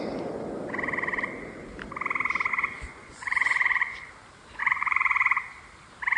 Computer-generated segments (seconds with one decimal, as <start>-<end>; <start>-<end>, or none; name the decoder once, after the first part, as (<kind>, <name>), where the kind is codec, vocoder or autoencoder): 2.5-4.1 (vocoder, Vocos); 4.6-5.4